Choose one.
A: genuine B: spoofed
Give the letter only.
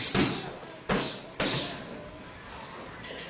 A